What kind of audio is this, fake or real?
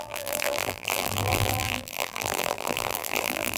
fake